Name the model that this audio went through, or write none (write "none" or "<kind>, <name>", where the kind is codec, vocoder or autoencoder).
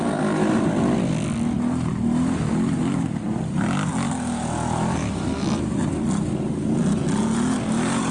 none